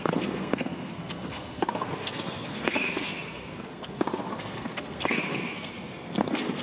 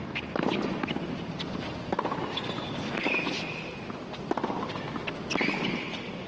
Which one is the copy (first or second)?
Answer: first